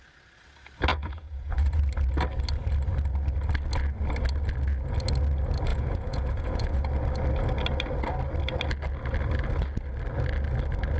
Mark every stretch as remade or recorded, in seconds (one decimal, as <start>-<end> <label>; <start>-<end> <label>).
0.0-0.9 recorded; 0.9-1.8 remade; 1.8-5.7 recorded; 5.7-6.8 remade; 6.8-11.0 recorded